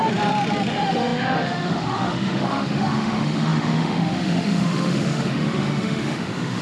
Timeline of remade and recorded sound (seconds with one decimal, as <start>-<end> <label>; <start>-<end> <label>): 0.0-0.7 recorded; 0.7-6.6 remade